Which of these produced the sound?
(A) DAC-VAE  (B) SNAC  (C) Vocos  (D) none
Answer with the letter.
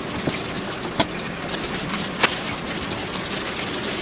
D